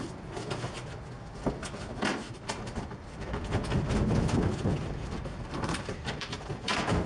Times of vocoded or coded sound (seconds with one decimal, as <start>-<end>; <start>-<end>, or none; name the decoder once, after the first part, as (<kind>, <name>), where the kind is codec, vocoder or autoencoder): 2.1-3.4 (vocoder, BigVGAN v2); 4.8-6.4